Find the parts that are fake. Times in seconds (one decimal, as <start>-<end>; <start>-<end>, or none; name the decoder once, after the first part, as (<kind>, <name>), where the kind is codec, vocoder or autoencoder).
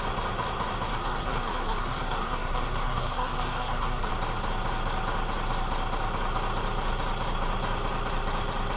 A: 0.9-4.1 (codec, SNAC)